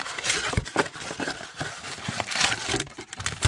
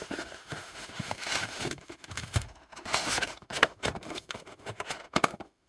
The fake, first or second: second